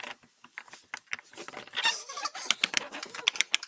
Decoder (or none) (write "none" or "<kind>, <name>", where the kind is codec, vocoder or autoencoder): none